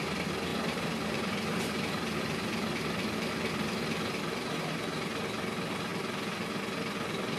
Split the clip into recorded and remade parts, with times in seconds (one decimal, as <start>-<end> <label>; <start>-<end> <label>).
0.0-0.5 recorded; 0.5-4.7 remade; 4.7-7.4 recorded